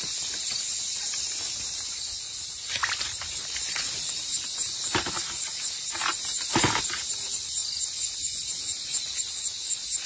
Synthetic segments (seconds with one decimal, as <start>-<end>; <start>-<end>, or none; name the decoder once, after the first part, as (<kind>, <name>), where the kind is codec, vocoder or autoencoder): none